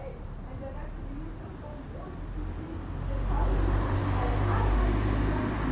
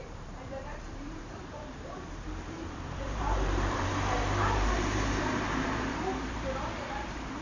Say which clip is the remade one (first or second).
second